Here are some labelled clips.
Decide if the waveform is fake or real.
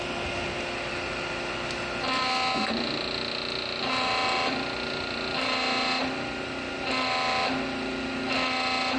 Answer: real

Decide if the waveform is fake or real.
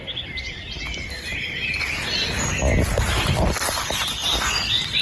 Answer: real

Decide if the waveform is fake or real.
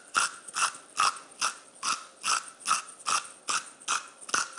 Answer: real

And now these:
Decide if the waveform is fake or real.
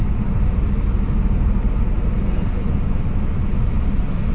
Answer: real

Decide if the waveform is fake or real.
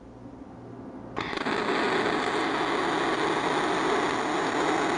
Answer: real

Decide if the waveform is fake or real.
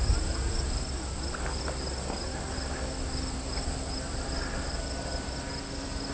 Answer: real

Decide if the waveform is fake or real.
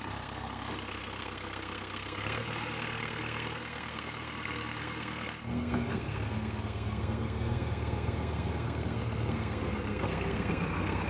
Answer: fake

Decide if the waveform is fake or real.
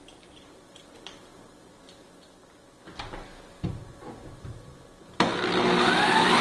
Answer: real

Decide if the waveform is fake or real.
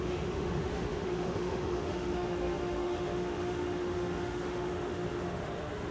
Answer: fake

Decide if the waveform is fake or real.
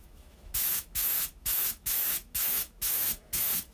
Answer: fake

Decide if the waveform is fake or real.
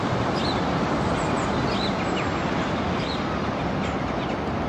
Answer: real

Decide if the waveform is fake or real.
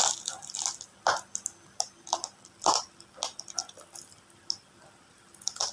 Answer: real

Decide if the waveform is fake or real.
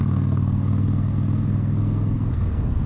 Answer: fake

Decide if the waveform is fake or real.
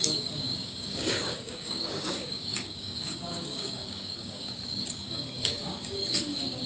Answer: fake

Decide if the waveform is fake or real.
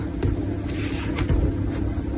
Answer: real